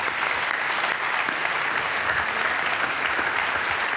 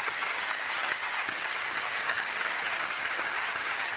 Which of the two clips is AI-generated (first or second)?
second